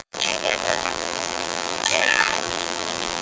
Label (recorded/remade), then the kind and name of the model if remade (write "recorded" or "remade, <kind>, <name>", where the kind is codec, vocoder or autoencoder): remade, vocoder, BigVGAN v2